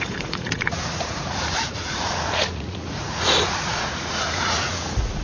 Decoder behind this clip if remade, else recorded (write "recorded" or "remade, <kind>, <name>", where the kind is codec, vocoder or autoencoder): remade, vocoder, Vocos